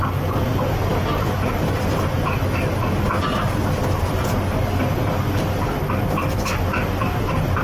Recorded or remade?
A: recorded